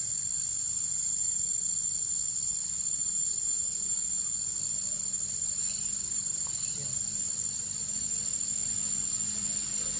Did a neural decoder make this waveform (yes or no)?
no